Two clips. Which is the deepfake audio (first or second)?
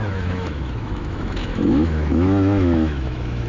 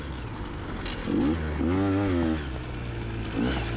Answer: first